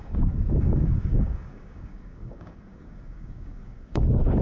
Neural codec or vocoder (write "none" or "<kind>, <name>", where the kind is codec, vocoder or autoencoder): codec, DAC